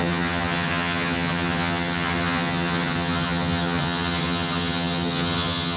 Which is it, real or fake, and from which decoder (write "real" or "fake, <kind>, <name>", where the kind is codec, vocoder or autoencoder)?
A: fake, vocoder, HiFi-GAN